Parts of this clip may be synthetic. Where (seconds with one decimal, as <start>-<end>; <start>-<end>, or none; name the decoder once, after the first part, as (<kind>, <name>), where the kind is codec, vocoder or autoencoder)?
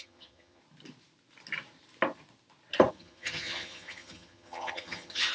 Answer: 0.0-0.6 (vocoder, HiFi-GAN); 2.9-5.3